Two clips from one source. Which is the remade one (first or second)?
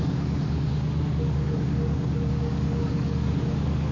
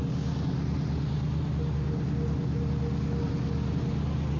first